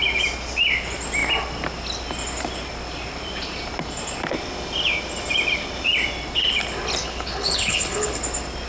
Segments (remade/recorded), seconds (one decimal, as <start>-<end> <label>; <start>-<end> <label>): 0.0-7.0 recorded; 7.0-8.2 remade; 8.2-8.7 recorded